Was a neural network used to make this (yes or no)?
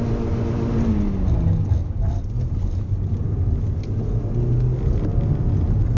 no